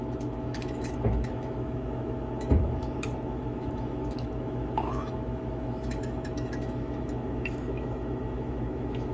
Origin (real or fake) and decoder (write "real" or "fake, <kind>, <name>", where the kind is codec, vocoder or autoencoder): fake, autoencoder, DAC-VAE